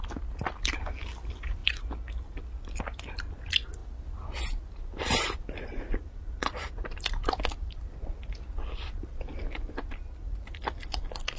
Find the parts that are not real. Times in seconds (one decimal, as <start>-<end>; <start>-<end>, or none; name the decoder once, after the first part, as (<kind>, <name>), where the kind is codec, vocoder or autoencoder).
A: none